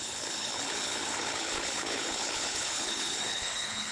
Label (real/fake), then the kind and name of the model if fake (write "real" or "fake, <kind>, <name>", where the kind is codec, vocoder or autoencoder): fake, codec, HILCodec